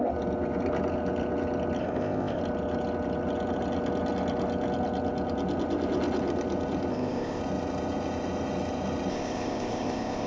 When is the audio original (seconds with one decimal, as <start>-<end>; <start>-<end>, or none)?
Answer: 0.0-1.8; 2.4-6.9; 7.4-9.1